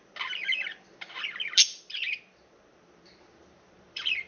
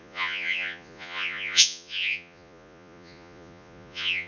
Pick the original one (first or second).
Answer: first